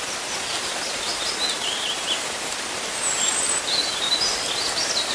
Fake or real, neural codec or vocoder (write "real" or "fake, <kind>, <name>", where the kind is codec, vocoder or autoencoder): real